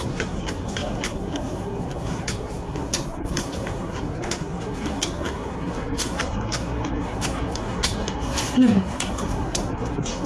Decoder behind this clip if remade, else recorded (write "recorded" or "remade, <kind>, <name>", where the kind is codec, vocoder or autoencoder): remade, codec, SNAC